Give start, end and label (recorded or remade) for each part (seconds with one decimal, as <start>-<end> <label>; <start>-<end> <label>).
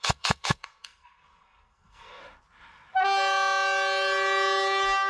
0.0-2.2 remade; 2.2-5.1 recorded